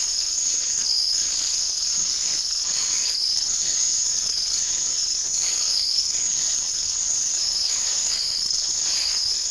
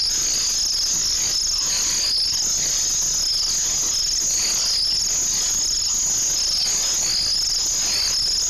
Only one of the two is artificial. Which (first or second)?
first